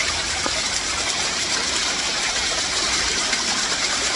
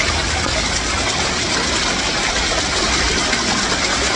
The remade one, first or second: first